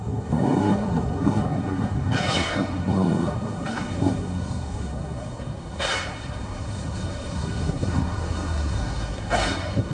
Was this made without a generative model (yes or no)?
no